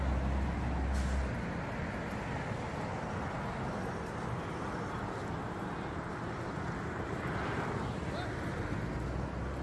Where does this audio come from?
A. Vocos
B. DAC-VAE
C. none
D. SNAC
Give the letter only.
C